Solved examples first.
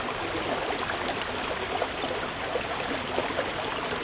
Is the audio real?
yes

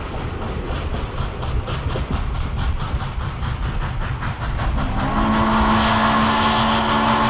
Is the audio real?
yes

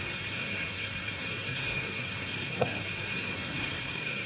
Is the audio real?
no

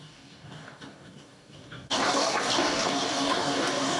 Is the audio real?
no